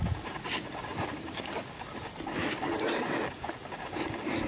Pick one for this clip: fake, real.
real